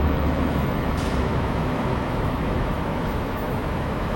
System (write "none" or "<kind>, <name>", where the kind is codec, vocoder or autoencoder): autoencoder, DAC-VAE